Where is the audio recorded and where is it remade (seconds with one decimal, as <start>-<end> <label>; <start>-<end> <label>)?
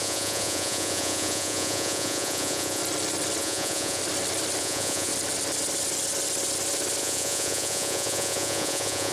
0.0-2.8 remade; 2.8-3.4 recorded; 3.4-4.0 remade; 4.0-4.6 recorded; 4.6-5.1 remade; 5.1-7.0 recorded; 7.0-9.1 remade